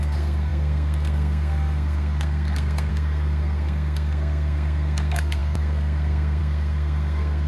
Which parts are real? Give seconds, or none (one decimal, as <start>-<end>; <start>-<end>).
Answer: none